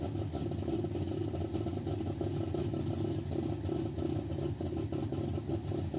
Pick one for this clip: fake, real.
real